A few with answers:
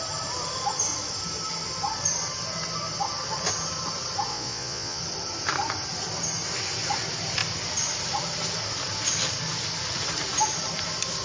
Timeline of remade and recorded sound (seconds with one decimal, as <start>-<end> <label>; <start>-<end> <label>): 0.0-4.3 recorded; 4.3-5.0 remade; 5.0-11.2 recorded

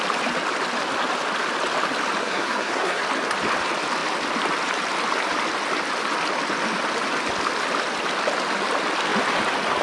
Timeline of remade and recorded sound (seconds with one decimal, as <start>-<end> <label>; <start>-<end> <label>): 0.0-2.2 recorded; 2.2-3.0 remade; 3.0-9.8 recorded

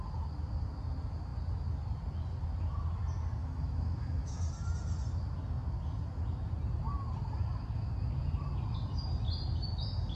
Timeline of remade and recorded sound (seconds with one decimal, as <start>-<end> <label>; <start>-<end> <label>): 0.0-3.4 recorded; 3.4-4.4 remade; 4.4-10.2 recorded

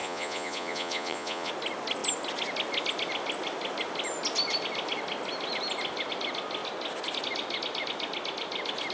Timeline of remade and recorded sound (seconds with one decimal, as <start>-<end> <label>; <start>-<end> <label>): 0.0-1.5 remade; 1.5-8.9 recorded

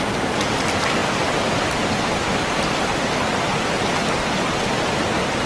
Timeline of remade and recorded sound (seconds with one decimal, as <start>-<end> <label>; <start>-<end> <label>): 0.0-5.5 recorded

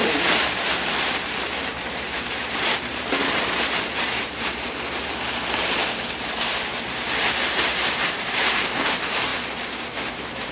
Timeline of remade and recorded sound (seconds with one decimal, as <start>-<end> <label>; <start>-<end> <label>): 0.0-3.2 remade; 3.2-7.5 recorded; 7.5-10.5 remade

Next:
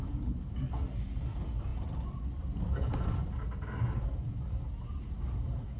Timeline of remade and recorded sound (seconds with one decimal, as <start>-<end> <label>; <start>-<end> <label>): 0.0-5.8 recorded